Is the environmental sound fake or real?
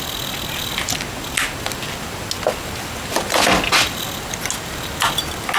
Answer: real